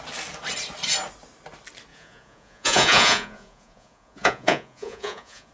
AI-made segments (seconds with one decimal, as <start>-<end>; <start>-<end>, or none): 1.9-5.5